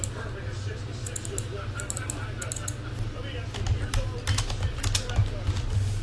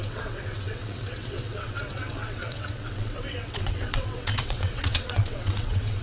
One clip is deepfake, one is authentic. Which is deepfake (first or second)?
second